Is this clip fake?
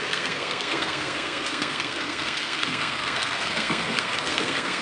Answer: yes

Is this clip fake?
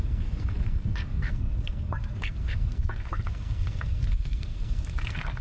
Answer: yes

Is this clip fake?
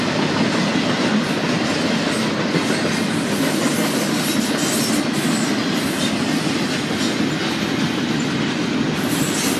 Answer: no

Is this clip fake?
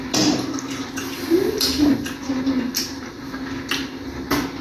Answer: no